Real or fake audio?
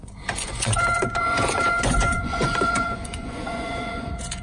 fake